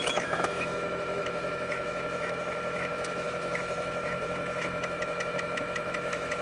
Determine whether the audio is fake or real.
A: fake